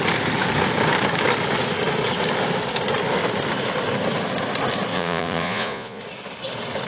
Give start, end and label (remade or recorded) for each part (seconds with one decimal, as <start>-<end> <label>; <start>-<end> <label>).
0.0-4.9 recorded; 4.9-6.0 remade; 6.0-6.9 recorded